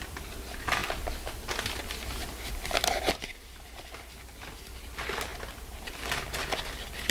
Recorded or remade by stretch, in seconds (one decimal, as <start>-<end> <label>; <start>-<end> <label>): 0.0-7.1 recorded